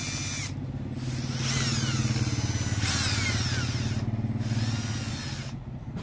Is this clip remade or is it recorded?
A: recorded